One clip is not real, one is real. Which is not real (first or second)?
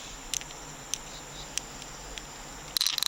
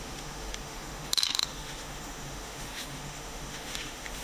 second